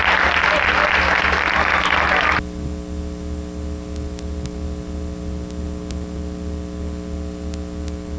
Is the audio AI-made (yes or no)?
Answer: no